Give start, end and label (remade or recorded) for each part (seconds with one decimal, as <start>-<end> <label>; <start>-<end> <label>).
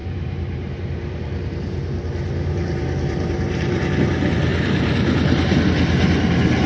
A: 0.0-4.0 remade; 4.0-4.5 recorded; 4.5-5.5 remade; 5.5-6.7 recorded